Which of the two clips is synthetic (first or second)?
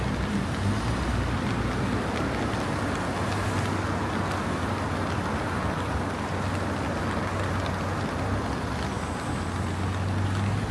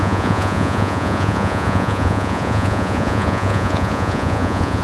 second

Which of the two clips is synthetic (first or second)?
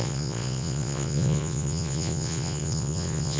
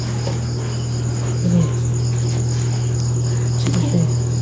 first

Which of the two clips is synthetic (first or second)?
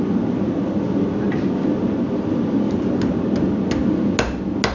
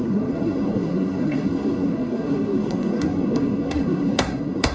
second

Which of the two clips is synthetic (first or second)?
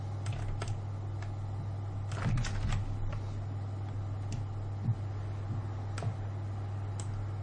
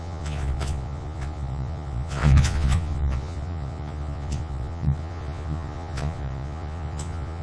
second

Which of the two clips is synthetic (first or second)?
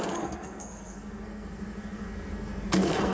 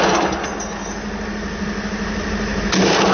first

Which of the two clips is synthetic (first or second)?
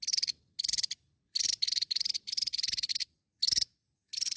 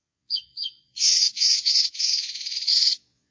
second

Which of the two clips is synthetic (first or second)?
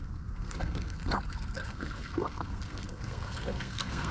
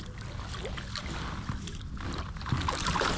first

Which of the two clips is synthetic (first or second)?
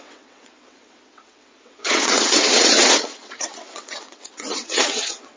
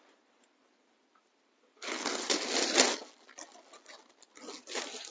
first